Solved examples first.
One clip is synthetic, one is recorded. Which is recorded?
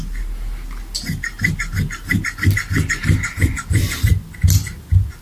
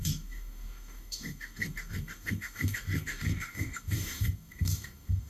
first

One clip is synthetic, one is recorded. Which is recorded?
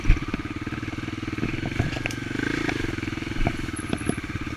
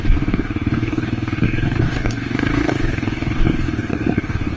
first